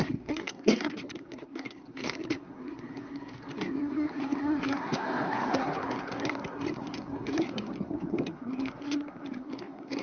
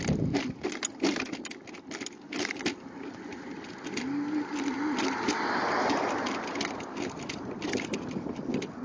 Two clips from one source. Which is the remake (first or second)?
first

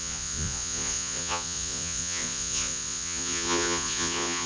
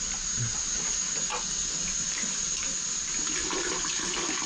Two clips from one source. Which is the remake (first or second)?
first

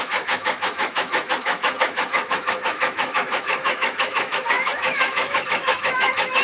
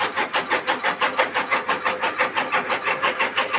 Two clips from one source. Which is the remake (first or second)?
first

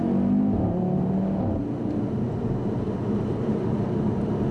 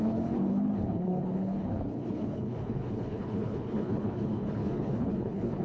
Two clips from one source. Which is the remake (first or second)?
second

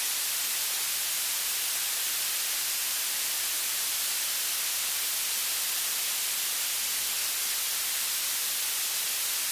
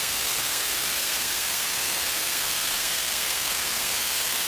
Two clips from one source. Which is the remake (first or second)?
second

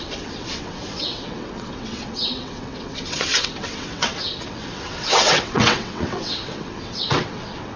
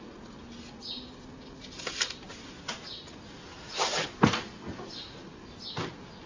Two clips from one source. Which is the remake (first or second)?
first